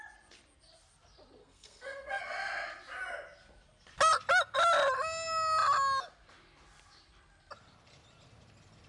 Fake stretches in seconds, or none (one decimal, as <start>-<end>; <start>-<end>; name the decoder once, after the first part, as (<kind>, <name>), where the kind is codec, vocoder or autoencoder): 1.4-2.2 (codec, SNAC)